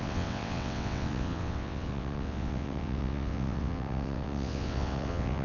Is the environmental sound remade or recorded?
remade